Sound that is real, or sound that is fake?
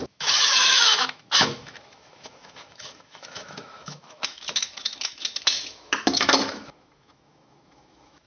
fake